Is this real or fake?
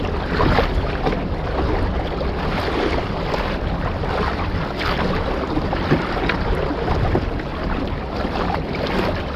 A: real